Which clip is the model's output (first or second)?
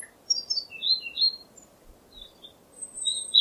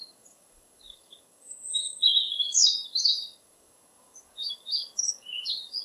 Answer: second